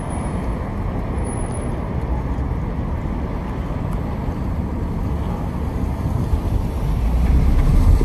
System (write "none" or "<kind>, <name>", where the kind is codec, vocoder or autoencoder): none